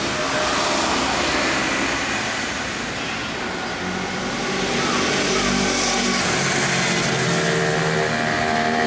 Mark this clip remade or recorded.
recorded